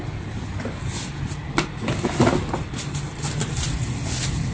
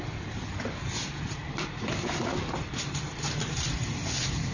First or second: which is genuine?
first